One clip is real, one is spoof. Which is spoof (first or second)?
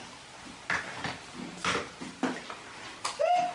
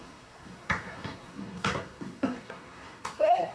second